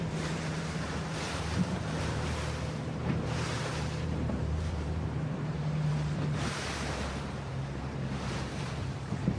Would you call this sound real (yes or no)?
no